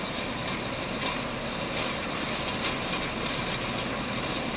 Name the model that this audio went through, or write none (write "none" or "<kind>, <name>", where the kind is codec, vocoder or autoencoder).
none